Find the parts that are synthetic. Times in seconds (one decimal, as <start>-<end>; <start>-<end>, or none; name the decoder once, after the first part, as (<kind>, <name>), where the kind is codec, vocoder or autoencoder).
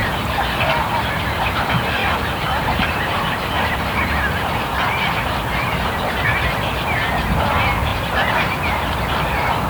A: 2.0-4.6 (vocoder, BigVGAN v2); 7.9-9.0